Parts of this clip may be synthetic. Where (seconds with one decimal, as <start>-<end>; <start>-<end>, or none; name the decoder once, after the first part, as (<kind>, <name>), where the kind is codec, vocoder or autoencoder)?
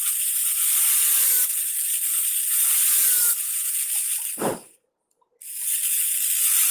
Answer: 0.0-1.0 (vocoder, BigVGAN v2)